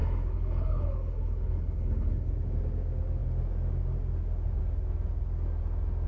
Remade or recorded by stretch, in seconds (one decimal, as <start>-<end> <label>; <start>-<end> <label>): 0.0-2.3 remade; 2.3-6.1 recorded